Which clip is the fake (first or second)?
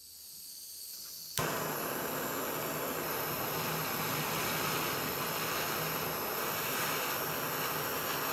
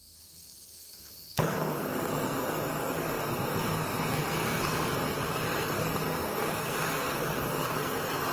second